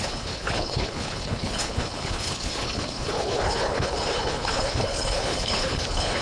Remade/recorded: remade